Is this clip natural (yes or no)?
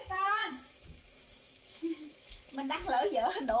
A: no